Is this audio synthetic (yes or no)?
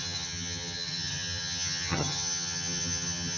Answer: yes